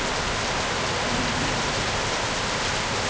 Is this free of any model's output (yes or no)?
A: yes